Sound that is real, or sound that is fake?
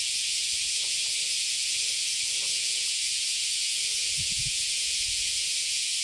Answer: fake